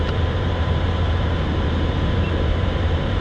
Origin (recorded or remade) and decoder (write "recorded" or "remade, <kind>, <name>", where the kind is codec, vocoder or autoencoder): remade, vocoder, BigVGAN v2